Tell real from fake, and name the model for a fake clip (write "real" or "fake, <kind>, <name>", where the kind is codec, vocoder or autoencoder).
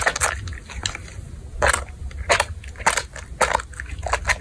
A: real